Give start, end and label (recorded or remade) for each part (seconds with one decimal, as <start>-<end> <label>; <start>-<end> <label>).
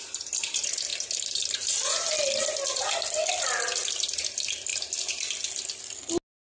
0.0-6.4 recorded